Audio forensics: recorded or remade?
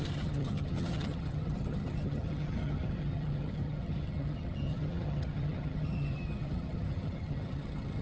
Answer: remade